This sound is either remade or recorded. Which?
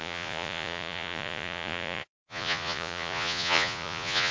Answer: remade